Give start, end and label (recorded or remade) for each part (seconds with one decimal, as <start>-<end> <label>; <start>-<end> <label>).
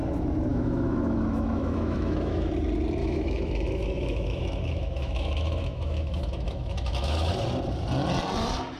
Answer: 0.0-0.5 recorded; 0.5-2.5 remade; 2.5-3.0 recorded; 3.0-7.3 remade; 7.3-8.8 recorded